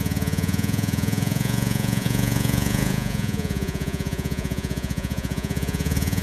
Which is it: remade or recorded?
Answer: remade